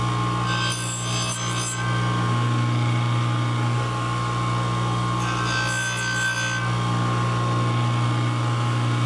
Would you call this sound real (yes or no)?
yes